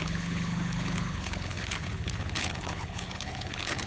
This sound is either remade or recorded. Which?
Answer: remade